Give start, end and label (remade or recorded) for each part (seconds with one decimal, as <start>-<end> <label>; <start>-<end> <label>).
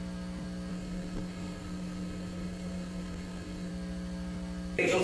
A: 0.0-0.7 recorded; 0.7-3.7 remade; 3.7-5.0 recorded